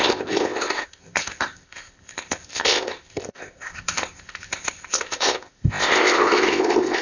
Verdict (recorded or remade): remade